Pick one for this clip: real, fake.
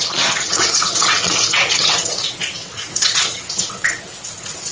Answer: fake